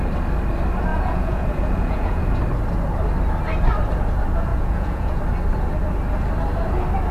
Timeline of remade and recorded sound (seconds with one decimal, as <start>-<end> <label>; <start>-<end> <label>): 0.0-0.9 recorded; 0.9-2.4 remade; 2.4-4.5 recorded; 4.5-5.2 remade; 5.2-7.1 recorded